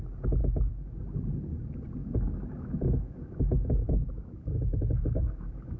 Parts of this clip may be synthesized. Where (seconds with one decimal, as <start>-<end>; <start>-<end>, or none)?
0.4-1.0; 2.0-5.8